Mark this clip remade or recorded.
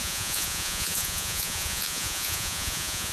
remade